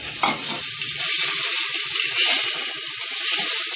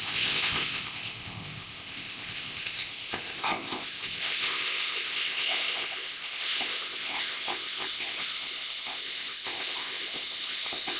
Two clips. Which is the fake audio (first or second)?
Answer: second